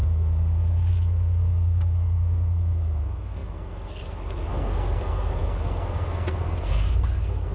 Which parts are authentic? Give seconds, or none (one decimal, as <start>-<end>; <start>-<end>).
none